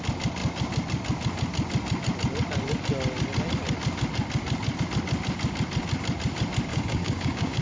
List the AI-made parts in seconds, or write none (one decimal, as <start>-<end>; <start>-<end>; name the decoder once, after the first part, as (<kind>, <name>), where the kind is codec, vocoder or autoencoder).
6.7-7.6 (codec, DAC)